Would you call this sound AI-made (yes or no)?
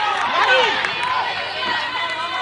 no